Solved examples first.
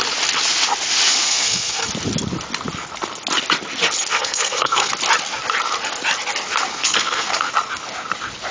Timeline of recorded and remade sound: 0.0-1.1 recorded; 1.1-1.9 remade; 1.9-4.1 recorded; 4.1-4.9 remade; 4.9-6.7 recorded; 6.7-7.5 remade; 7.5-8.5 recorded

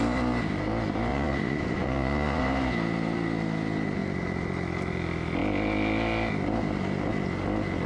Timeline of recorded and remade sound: 0.0-1.1 recorded; 1.1-2.4 remade; 2.4-7.9 recorded

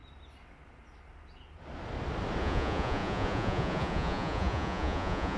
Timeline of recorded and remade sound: 0.0-2.4 recorded; 2.4-5.4 remade

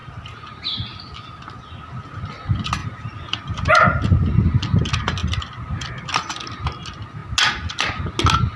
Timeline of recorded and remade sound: 0.0-2.8 recorded; 2.8-4.0 remade; 4.0-5.2 recorded; 5.2-5.9 remade; 5.9-8.6 recorded

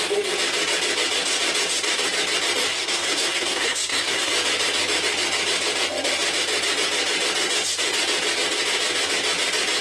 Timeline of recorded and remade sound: 0.0-2.7 recorded; 2.7-4.3 remade; 4.3-9.8 recorded

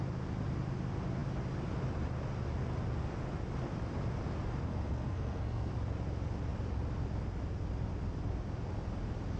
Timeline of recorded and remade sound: 0.0-4.7 recorded; 4.7-5.7 remade; 5.7-9.4 recorded